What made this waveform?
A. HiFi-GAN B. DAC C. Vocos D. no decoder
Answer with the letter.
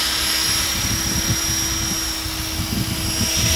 D